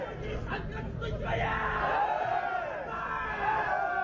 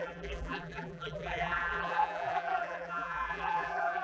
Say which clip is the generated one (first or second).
second